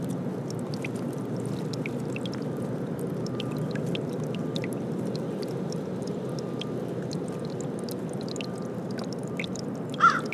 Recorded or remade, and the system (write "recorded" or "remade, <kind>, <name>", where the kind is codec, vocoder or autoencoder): recorded